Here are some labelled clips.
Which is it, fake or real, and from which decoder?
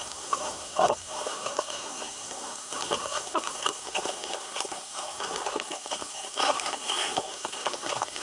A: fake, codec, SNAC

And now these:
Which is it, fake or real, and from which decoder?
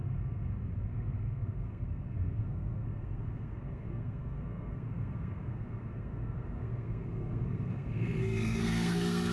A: fake, codec, SNAC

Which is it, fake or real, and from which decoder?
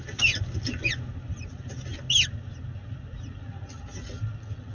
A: real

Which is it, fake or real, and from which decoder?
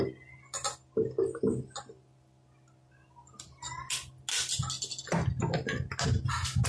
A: real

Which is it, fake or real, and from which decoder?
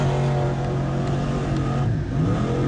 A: real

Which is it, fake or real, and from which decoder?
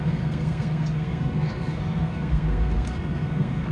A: fake, codec, SNAC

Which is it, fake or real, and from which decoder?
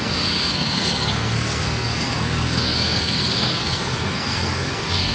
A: fake, codec, SNAC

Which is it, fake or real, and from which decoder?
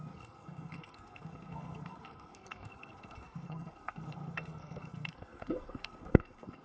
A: fake, codec, SNAC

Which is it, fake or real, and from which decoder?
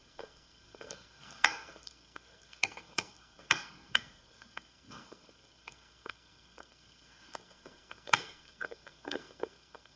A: fake, codec, SNAC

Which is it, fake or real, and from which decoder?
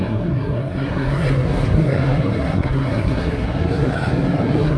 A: fake, codec, SNAC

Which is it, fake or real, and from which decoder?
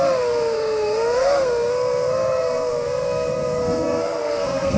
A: fake, codec, SNAC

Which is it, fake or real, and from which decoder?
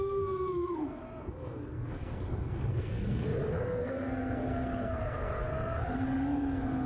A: fake, codec, SNAC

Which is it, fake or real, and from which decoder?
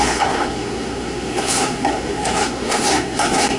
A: fake, codec, SNAC